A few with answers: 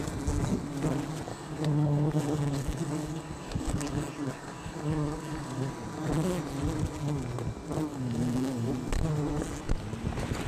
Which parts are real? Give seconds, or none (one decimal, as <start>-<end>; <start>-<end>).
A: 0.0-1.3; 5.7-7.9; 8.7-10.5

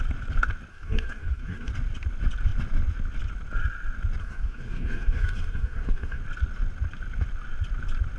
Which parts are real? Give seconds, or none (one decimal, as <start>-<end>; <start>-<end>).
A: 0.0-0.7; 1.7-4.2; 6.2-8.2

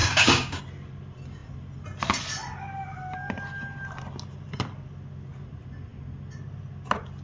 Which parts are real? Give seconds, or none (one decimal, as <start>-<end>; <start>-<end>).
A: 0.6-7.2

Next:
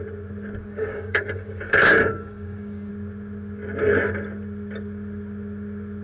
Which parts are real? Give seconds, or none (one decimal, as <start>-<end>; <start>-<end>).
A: 0.0-0.6; 2.9-6.0

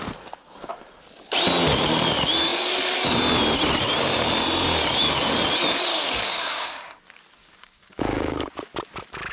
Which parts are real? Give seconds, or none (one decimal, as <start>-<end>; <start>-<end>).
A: 0.0-5.9; 7.0-7.4; 8.5-9.3